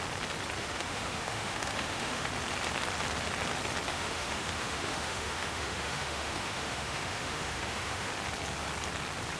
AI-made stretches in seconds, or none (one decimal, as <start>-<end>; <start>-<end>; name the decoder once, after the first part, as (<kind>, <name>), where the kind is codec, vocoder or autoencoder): 0.6-2.3 (autoencoder, DAC-VAE); 3.9-8.1